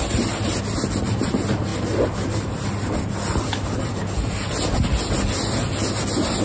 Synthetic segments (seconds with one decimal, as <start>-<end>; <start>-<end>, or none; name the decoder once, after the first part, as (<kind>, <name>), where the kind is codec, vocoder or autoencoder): none